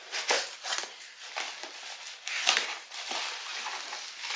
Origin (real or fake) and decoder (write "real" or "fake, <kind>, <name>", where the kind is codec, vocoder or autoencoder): real